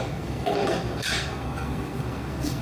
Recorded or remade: remade